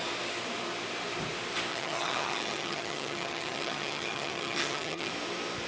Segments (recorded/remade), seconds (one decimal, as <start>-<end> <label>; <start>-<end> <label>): 0.0-1.7 recorded; 1.7-5.1 remade; 5.1-5.7 recorded